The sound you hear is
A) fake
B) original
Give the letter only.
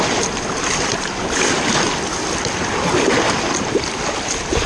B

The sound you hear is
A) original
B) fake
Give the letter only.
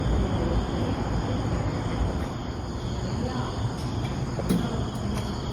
B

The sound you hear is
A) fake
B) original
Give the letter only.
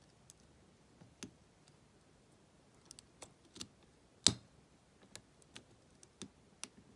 B